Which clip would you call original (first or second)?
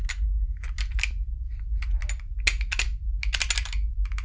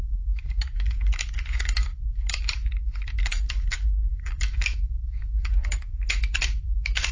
first